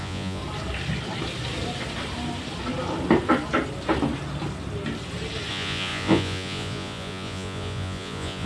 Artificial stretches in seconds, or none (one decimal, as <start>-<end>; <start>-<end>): 0.0-0.4; 5.5-8.5